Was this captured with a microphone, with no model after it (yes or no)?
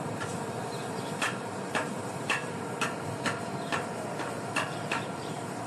no